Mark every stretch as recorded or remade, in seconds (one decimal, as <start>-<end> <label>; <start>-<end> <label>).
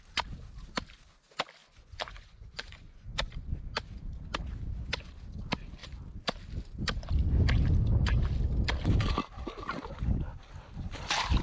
0.0-1.6 recorded; 1.6-3.6 remade; 3.6-11.4 recorded